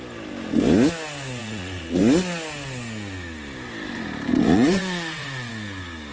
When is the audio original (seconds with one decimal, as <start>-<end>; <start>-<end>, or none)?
0.0-1.4; 2.0-4.3; 5.5-6.1